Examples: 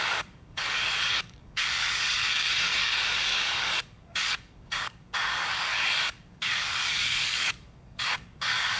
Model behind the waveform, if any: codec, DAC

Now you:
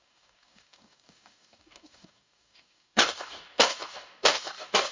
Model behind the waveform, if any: codec, DAC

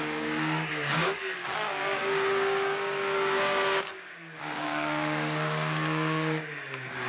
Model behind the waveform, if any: codec, DAC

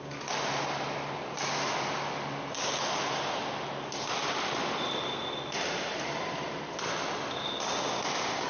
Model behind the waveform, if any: none